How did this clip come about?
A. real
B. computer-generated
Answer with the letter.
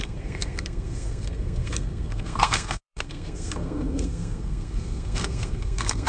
B